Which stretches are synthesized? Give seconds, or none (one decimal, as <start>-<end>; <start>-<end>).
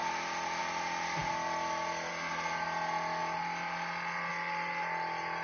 none